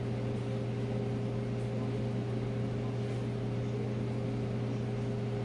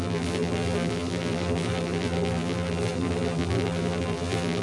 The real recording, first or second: first